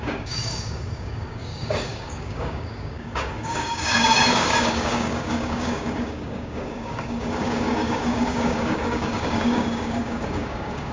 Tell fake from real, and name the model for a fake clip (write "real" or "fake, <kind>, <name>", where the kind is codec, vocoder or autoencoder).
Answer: fake, codec, DAC